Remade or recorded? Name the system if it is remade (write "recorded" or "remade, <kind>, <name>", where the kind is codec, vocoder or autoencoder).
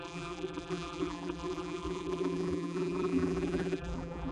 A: remade, vocoder, BigVGAN v2